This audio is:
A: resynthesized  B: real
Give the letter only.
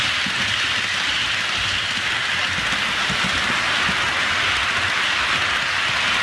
B